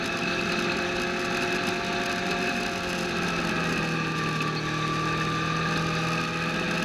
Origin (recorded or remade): recorded